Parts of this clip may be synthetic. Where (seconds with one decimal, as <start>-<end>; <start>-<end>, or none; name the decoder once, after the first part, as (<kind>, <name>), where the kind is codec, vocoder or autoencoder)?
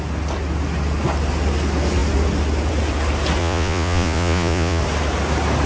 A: 3.4-4.8 (vocoder, Vocos)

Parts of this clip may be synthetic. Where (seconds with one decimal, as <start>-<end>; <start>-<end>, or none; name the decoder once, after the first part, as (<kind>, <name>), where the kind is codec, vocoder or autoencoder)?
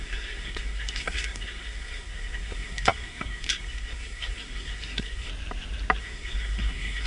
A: 0.0-5.3 (codec, SNAC); 6.0-7.1